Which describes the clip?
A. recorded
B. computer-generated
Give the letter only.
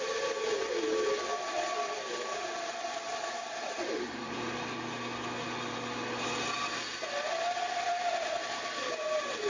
A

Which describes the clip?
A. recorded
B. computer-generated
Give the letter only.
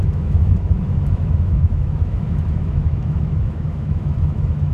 B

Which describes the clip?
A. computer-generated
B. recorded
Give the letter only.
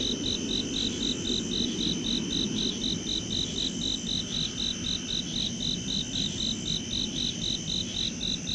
B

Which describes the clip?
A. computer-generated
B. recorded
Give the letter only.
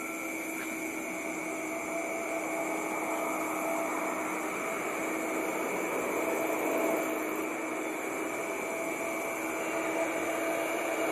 B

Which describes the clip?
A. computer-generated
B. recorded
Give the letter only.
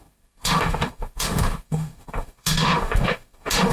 A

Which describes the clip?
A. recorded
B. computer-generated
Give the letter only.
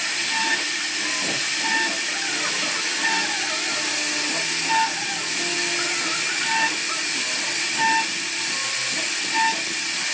A